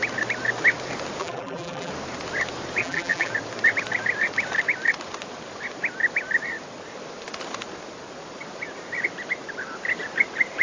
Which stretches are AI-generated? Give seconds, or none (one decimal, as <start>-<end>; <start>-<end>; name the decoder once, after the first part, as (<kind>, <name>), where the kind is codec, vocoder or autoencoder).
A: 1.2-1.9 (vocoder, BigVGAN v2); 2.8-3.3